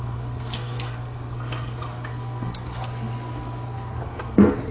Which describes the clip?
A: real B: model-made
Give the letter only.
B